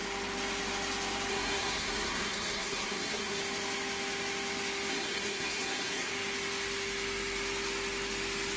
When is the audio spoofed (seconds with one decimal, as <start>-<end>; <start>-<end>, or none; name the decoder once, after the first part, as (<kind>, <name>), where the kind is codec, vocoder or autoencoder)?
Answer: 1.3-3.4 (codec, SNAC); 4.9-6.1